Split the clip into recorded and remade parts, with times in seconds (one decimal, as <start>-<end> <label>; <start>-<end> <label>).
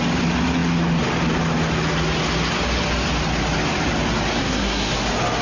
0.0-4.4 recorded; 4.4-4.9 remade; 4.9-5.4 recorded